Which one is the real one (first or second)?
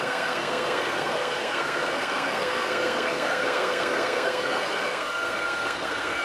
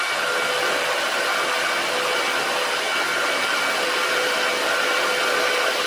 second